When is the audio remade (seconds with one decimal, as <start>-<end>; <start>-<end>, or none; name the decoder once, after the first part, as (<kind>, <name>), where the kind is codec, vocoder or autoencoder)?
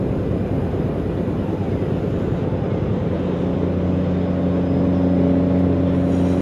0.0-1.6 (vocoder, BigVGAN v2); 2.9-3.5